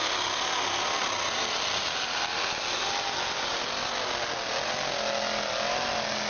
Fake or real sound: real